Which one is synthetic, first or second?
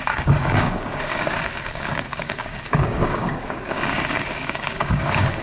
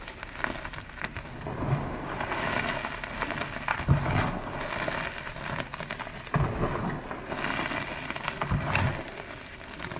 first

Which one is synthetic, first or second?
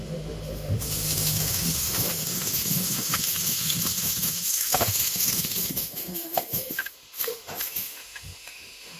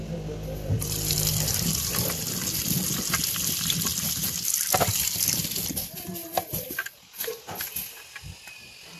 first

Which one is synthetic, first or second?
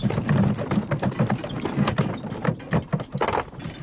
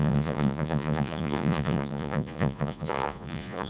second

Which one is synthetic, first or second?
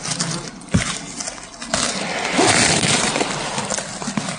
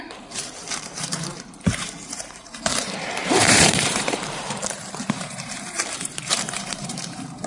second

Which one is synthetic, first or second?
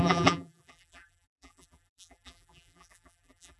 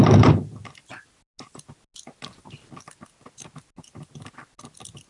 first